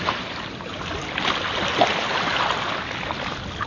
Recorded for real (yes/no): yes